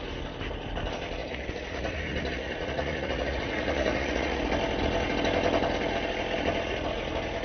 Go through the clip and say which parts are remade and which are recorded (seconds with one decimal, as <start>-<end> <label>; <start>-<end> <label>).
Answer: 0.0-1.2 recorded; 1.2-4.4 remade; 4.4-7.4 recorded